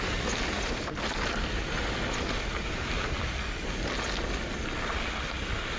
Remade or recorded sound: recorded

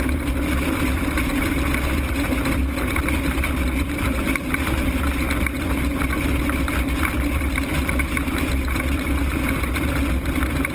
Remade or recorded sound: remade